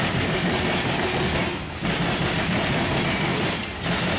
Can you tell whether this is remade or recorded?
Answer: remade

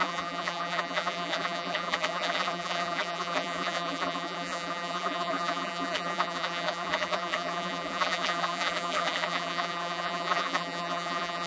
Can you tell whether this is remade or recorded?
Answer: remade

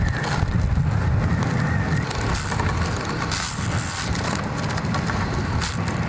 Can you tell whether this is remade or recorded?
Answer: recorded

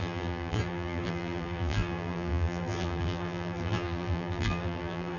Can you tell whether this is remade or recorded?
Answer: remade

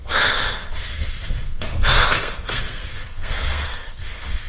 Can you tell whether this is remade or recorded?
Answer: remade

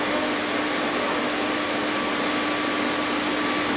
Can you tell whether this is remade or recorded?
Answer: recorded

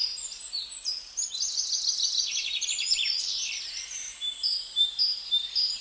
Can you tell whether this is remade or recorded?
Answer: recorded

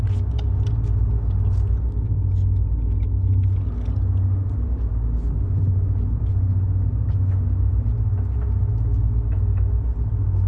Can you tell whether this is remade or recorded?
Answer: recorded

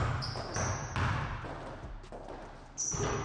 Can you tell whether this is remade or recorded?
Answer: recorded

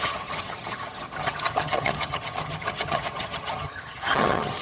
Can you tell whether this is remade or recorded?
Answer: remade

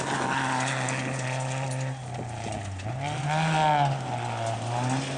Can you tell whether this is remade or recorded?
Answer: recorded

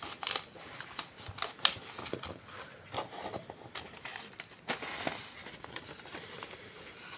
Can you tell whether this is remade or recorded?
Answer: recorded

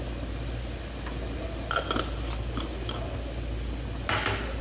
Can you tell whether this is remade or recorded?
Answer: recorded